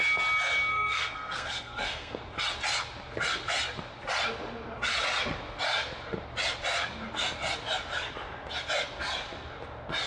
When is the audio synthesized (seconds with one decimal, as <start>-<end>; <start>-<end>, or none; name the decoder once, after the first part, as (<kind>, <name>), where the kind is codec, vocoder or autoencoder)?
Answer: 0.7-2.2 (codec, SNAC)